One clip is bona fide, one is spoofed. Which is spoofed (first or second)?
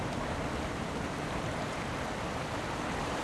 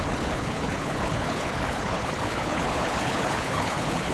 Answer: second